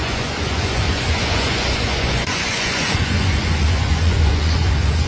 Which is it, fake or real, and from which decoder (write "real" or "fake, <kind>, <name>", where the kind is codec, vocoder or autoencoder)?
fake, vocoder, Vocos